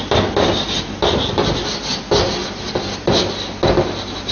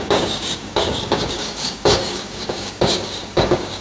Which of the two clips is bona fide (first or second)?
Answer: first